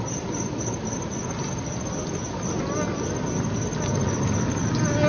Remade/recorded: recorded